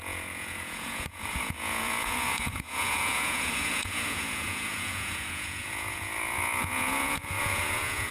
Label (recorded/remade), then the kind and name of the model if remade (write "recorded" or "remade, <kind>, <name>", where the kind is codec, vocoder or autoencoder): remade, vocoder, Vocos